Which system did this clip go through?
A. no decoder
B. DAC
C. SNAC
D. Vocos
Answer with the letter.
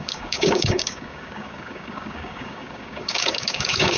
B